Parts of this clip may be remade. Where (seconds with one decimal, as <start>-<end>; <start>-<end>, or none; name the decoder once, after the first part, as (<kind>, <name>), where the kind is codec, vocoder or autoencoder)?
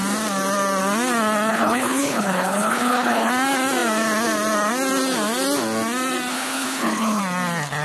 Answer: 1.5-3.3 (codec, HILCodec); 6.3-7.2